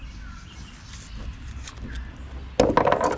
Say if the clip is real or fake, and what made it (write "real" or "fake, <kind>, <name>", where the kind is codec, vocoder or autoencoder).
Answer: real